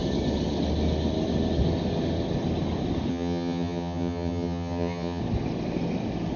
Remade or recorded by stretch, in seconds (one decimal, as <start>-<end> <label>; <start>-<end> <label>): 0.0-3.1 recorded; 3.1-5.2 remade; 5.2-6.4 recorded